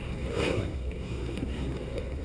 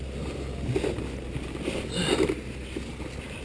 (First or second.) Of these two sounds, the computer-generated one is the first